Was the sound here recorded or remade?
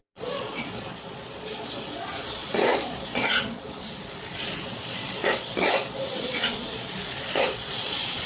remade